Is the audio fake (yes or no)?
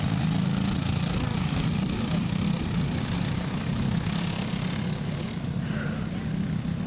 no